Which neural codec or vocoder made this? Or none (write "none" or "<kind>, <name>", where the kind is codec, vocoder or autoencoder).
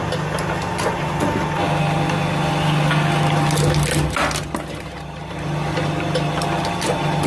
none